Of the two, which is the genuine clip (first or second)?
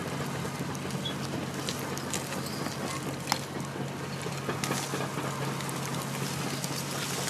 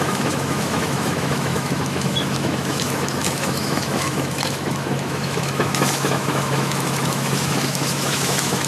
first